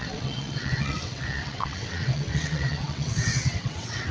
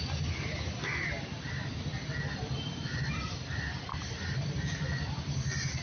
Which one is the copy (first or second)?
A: first